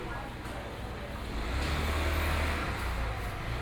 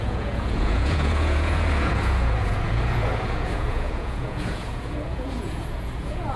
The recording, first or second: first